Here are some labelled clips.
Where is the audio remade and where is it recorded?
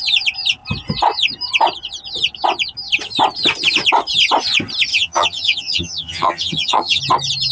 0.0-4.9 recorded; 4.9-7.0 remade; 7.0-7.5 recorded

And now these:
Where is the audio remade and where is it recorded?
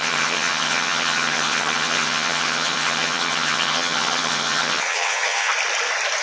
0.0-5.5 remade; 5.5-6.2 recorded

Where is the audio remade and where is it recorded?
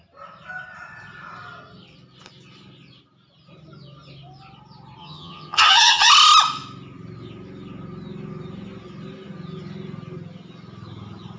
0.0-5.0 recorded; 5.0-6.1 remade; 6.1-11.4 recorded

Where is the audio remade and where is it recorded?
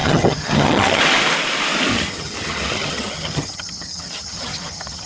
0.0-1.0 remade; 1.0-1.9 recorded; 1.9-5.1 remade